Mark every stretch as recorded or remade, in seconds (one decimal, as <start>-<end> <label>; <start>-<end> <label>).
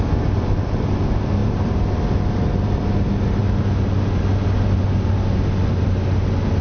0.0-6.6 recorded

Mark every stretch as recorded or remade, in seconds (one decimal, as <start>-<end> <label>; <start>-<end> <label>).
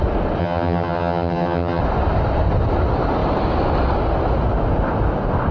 0.0-0.4 recorded; 0.4-1.8 remade; 1.8-5.5 recorded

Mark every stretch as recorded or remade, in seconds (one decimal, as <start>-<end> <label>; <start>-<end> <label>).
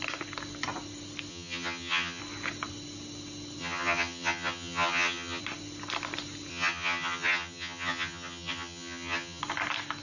0.0-1.3 recorded; 1.3-2.2 remade; 2.2-3.6 recorded; 3.6-5.4 remade; 5.4-6.5 recorded; 6.5-9.4 remade; 9.4-10.0 recorded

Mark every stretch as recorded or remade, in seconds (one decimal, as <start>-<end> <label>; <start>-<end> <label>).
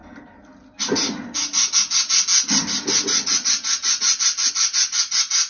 0.0-5.5 recorded